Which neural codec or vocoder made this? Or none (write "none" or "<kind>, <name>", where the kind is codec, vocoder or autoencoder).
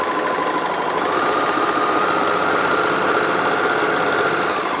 none